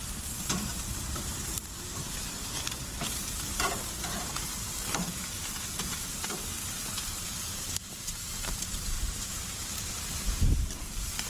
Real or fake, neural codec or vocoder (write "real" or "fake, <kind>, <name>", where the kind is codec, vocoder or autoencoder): fake, vocoder, BigVGAN v2